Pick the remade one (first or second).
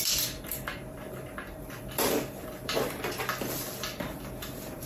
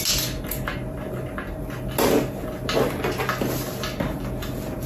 first